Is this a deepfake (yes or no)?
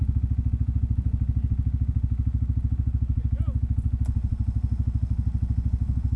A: no